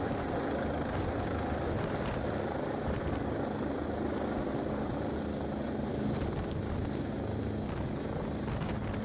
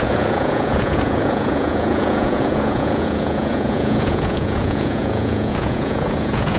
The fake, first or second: second